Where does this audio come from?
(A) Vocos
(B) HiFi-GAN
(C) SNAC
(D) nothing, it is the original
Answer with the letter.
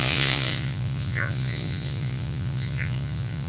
A